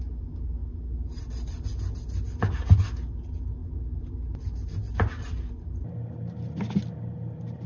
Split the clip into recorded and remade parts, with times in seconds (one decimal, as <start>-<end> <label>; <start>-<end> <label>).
0.0-7.7 recorded